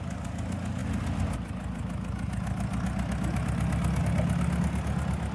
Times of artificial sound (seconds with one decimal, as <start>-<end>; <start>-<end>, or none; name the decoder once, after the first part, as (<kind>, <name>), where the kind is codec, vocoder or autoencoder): none